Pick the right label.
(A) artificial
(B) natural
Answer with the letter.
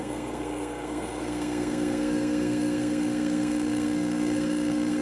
A